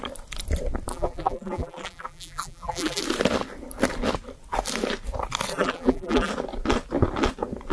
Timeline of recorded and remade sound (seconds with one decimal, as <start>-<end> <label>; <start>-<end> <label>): 0.0-0.9 recorded; 0.9-3.0 remade; 3.0-5.5 recorded; 5.5-6.3 remade; 6.3-7.7 recorded